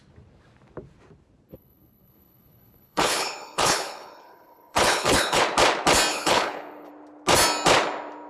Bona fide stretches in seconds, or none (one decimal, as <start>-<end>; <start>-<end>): 0.0-1.5; 5.4-6.1; 6.9-8.3